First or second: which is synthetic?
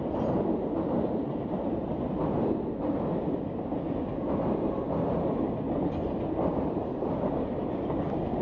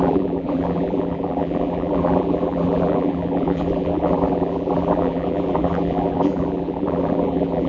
second